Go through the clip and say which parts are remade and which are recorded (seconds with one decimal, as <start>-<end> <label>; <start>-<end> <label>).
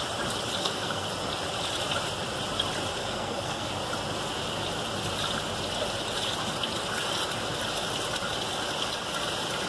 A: 0.0-0.6 recorded; 0.6-1.1 remade; 1.1-3.0 recorded; 3.0-3.7 remade; 3.7-9.7 recorded